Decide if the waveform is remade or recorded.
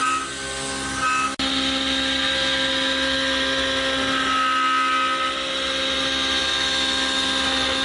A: recorded